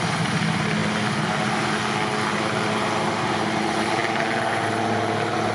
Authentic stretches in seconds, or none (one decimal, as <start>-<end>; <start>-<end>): 0.0-5.5